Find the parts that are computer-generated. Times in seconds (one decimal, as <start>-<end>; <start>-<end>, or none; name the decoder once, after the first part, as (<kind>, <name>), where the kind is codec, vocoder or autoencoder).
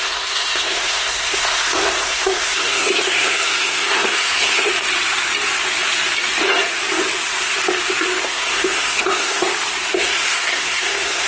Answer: 0.0-4.7 (codec, SNAC); 8.2-9.5; 10.0-11.3